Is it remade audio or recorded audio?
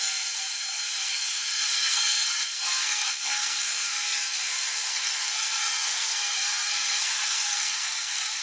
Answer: remade